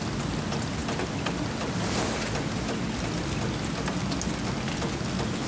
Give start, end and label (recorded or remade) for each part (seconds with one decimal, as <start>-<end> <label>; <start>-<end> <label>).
0.0-5.5 recorded